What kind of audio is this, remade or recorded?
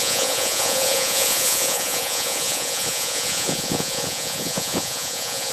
remade